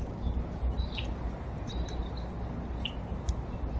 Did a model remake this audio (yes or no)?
no